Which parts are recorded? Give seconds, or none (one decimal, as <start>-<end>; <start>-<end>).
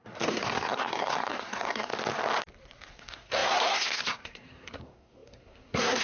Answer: 1.9-2.9